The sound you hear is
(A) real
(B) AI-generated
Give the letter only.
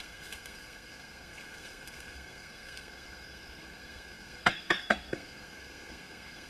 B